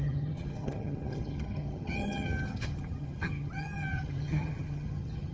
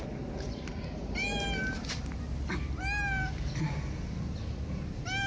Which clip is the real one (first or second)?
second